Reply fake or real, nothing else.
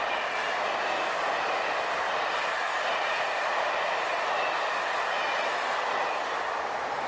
real